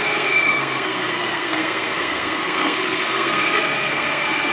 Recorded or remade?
remade